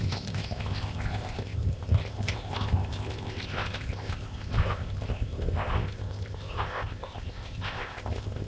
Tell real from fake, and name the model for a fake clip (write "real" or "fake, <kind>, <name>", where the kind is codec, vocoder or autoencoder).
fake, codec, ZipCodec